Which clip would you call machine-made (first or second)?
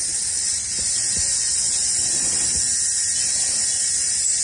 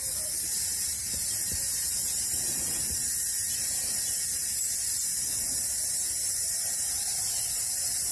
second